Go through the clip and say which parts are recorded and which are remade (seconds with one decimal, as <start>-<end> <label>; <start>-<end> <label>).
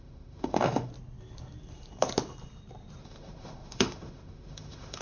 0.0-0.9 remade; 0.9-3.0 recorded; 3.0-5.0 remade